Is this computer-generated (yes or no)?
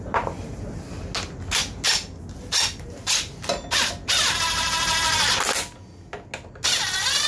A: no